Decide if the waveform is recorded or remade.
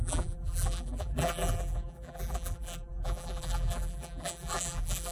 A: remade